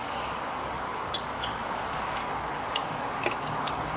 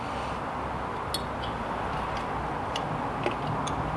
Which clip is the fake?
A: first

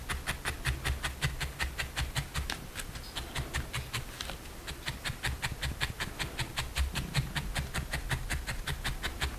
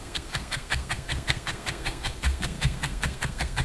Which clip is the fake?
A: second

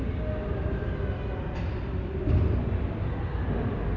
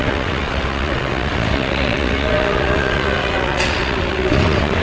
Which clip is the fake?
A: second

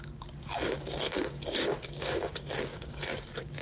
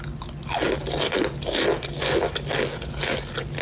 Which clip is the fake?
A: first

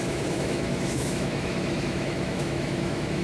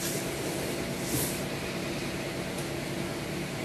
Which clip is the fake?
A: first